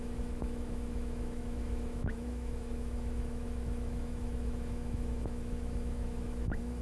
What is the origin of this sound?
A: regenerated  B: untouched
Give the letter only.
A